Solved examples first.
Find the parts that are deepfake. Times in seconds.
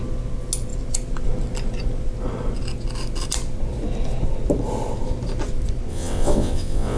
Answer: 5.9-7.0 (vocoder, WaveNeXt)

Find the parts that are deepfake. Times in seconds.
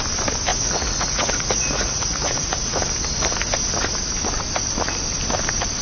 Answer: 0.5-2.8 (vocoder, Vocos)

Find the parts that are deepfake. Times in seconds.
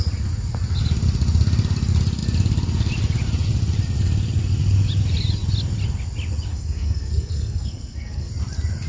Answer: 6.5-8.3 (codec, SNAC)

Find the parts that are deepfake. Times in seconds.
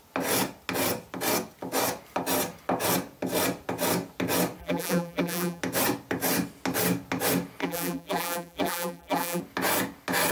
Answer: 4.6-5.6 (vocoder, BigVGAN v2); 7.6-9.4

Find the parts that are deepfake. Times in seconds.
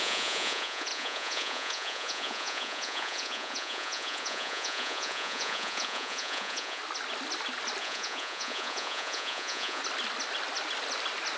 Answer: 0.0-6.8 (vocoder, Vocos); 7.8-9.8